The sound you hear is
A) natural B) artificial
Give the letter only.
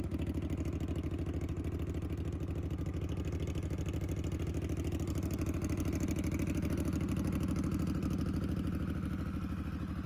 A